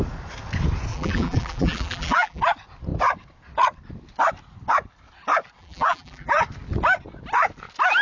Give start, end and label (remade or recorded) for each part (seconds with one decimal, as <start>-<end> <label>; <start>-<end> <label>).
0.0-0.9 recorded; 0.9-2.4 remade; 2.4-5.6 recorded; 5.6-6.4 remade; 6.4-8.0 recorded